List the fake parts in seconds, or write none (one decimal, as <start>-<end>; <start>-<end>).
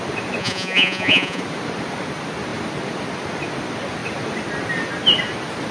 0.4-1.4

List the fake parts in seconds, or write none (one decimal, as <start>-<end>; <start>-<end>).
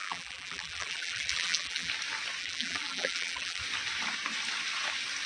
0.0-1.9; 2.4-3.6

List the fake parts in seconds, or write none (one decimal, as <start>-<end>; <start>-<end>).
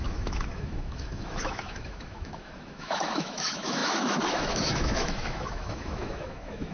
0.0-6.7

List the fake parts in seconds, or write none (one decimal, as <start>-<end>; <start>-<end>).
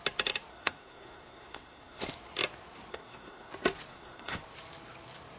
0.5-2.0; 2.9-3.5; 3.9-4.4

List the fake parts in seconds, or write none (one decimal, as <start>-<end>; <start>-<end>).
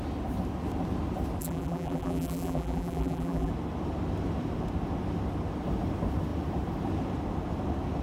1.4-3.5